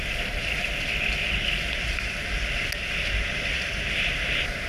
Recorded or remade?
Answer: recorded